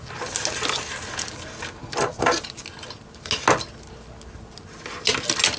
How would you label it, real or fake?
real